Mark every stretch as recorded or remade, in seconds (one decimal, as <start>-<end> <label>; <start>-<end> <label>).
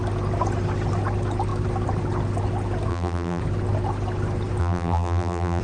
0.0-2.9 recorded; 2.9-3.4 remade; 3.4-4.6 recorded; 4.6-5.6 remade